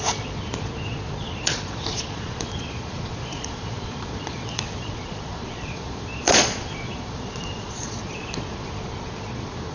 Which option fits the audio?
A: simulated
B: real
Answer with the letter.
A